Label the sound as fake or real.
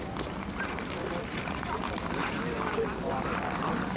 real